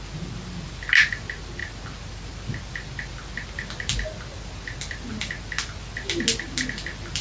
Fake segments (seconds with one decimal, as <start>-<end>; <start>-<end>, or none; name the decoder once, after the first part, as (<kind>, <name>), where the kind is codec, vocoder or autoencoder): none